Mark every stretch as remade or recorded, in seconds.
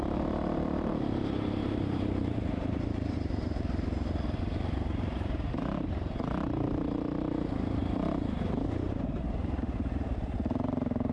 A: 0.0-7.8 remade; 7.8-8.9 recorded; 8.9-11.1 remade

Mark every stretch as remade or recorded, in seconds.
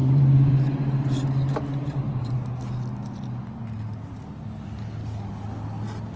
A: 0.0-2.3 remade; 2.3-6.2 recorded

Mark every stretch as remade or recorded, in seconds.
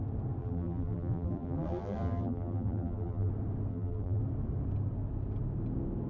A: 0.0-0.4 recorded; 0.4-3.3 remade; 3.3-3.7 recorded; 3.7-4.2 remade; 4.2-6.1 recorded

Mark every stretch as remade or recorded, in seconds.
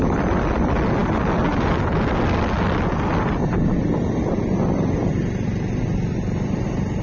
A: 0.0-7.0 recorded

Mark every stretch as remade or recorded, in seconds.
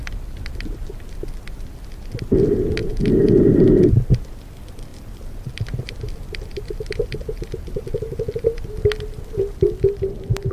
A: 0.0-4.9 recorded; 4.9-10.5 remade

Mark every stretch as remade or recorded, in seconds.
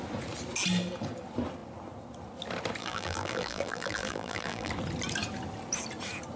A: 0.0-2.8 recorded; 2.8-4.7 remade; 4.7-6.4 recorded